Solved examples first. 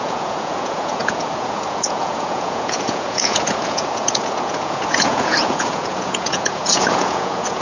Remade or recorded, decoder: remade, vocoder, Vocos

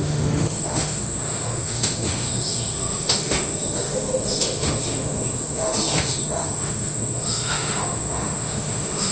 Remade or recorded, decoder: remade, autoencoder, DAC-VAE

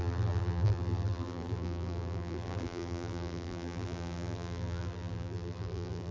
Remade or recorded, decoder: remade, vocoder, BigVGAN v2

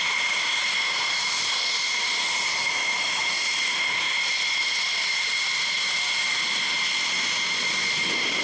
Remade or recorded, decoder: recorded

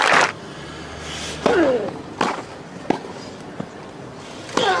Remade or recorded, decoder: recorded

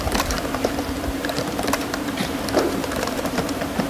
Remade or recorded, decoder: remade, vocoder, BigVGAN v2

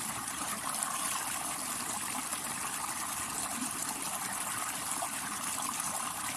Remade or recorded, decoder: remade, vocoder, BigVGAN v2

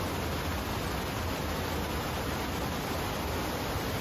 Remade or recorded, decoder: recorded